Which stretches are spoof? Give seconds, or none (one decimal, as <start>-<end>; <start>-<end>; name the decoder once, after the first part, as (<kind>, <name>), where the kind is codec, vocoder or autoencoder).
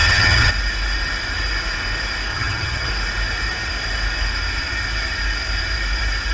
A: 0.0-0.5 (vocoder, HiFi-GAN); 2.3-2.9